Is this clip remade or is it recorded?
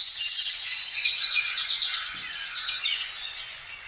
remade